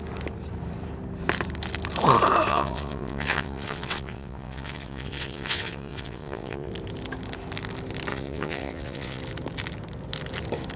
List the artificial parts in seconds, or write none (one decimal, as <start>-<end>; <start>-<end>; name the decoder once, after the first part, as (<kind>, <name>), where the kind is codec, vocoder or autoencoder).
2.5-6.7 (vocoder, WaveNeXt); 8.1-9.2